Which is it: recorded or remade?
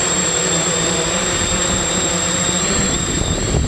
remade